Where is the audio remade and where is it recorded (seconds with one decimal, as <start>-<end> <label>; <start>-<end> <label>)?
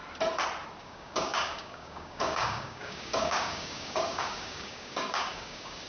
0.0-0.8 recorded; 0.8-5.9 remade